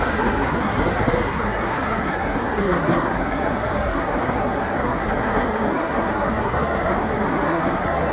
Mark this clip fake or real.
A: fake